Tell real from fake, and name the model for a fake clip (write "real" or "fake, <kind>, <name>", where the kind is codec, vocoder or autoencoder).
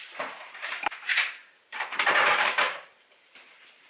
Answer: fake, vocoder, BigVGAN v2